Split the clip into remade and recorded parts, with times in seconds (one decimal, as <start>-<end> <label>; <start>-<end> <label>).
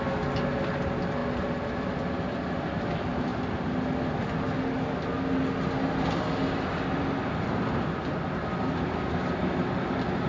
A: 0.0-10.3 recorded